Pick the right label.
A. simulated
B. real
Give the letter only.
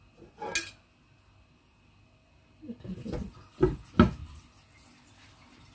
B